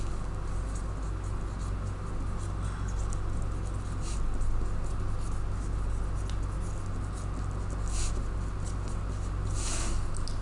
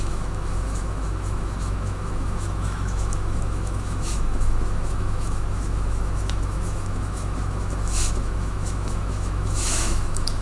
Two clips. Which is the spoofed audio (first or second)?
second